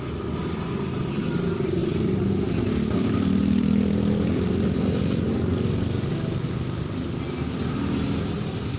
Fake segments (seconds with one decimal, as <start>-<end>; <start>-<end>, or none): none